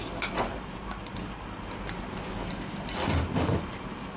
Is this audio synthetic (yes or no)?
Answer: no